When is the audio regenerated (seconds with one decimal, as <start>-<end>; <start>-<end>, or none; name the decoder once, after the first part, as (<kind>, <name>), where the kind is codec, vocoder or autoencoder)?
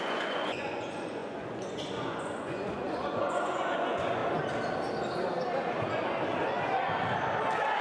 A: 0.0-4.2 (vocoder, Vocos)